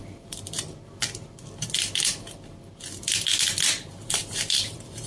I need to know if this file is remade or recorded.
remade